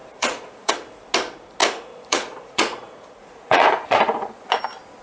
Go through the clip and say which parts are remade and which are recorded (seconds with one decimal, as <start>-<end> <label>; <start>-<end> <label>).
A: 0.0-0.7 remade; 0.7-1.6 recorded; 1.6-4.6 remade; 4.6-5.0 recorded